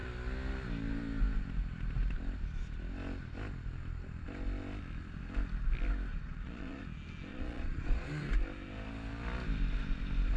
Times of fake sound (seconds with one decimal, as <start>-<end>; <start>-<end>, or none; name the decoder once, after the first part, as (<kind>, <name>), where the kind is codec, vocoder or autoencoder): 6.1-6.8 (vocoder, Vocos); 7.3-8.1